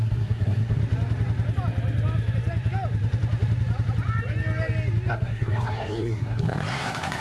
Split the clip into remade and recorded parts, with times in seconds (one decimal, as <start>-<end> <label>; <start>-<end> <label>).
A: 0.0-0.8 remade; 0.8-5.1 recorded; 5.1-7.2 remade